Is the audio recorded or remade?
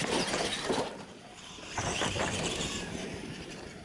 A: remade